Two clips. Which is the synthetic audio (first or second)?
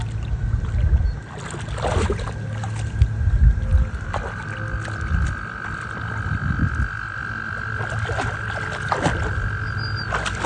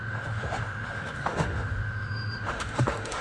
second